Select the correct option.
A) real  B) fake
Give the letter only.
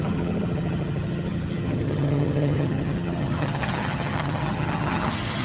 B